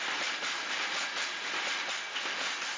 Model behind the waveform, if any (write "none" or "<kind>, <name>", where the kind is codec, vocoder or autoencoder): none